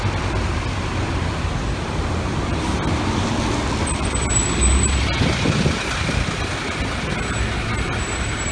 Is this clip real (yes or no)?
yes